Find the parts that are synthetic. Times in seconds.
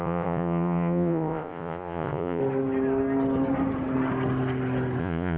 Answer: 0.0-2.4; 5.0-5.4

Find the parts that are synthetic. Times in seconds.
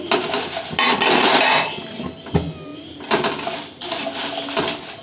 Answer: none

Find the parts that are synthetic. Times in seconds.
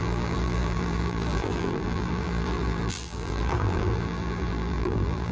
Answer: 0.0-5.3